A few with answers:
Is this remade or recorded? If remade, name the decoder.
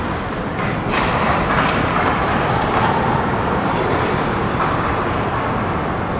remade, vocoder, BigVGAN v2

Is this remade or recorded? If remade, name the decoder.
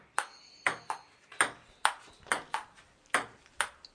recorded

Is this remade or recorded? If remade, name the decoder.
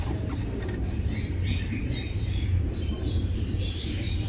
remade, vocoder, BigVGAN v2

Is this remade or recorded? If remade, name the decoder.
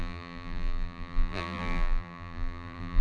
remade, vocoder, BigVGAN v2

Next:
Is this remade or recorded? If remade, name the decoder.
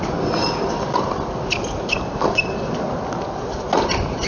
recorded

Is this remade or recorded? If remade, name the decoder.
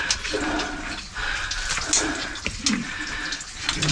recorded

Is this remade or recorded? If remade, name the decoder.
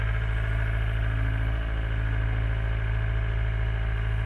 remade, vocoder, BigVGAN v2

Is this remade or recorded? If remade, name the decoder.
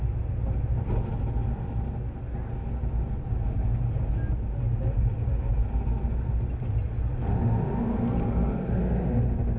recorded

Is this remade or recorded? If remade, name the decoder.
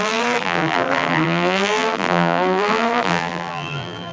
remade, vocoder, BigVGAN v2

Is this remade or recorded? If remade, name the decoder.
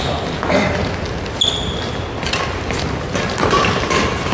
remade, vocoder, BigVGAN v2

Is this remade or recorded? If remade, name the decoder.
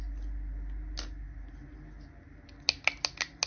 recorded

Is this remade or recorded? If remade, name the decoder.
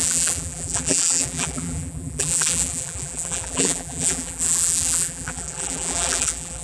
remade, vocoder, BigVGAN v2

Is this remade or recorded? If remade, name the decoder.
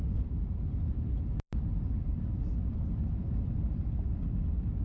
remade, vocoder, BigVGAN v2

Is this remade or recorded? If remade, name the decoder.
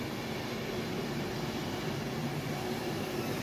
recorded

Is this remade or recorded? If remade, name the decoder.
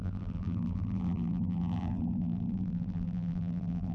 remade, vocoder, BigVGAN v2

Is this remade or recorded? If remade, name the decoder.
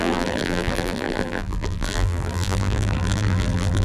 remade, vocoder, BigVGAN v2